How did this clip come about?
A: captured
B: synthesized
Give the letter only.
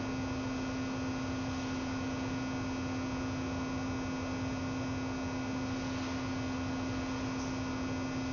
A